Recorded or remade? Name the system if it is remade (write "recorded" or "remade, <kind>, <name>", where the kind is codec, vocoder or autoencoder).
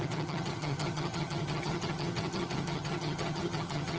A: remade, vocoder, HiFi-GAN